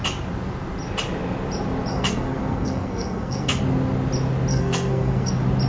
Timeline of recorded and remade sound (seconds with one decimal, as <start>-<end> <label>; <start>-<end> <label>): 0.0-1.9 recorded; 1.9-3.6 remade; 3.6-4.5 recorded; 4.5-5.3 remade; 5.3-5.7 recorded